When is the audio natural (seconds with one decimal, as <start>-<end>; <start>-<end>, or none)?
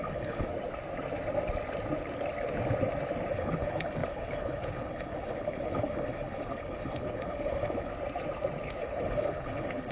0.5-3.3; 7.9-8.8